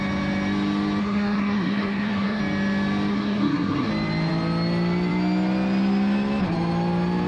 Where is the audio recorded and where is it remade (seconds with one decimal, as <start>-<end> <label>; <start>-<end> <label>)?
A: 0.0-1.0 recorded; 1.0-2.4 remade; 2.4-3.1 recorded; 3.1-3.9 remade; 3.9-7.3 recorded